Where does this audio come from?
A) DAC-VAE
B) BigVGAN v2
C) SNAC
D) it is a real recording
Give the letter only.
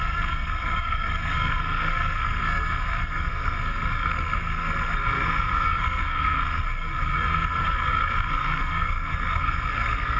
C